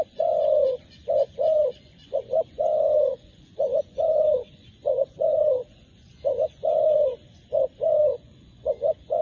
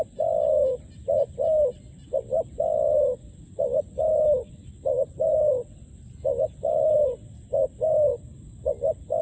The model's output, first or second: first